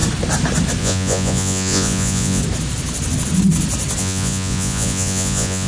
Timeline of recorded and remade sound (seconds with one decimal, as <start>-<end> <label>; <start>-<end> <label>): 0.0-0.8 recorded; 0.8-2.4 remade; 2.4-4.0 recorded; 4.0-5.7 remade